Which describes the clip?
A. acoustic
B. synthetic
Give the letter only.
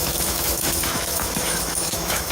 B